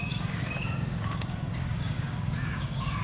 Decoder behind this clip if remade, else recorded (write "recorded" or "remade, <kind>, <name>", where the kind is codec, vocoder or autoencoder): remade, codec, DAC